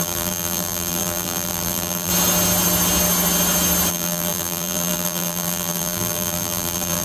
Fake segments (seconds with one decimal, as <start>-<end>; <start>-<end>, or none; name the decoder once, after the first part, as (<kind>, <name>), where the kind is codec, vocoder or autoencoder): 0.0-2.1 (vocoder, BigVGAN v2); 3.9-7.0